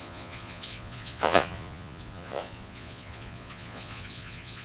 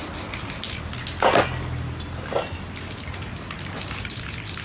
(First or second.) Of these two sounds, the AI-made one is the first